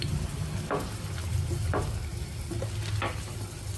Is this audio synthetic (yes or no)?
no